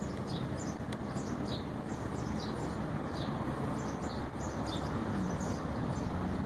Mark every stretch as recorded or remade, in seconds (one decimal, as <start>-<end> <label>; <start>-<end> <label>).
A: 0.0-6.5 recorded